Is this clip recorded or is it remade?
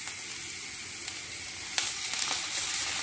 recorded